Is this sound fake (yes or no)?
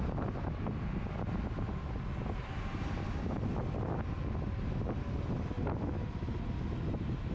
no